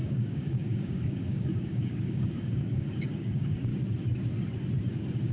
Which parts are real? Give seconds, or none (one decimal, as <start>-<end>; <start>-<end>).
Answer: 3.7-5.3